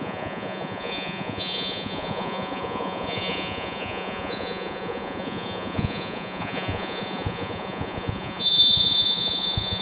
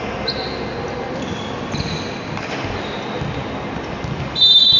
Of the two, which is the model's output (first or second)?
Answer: first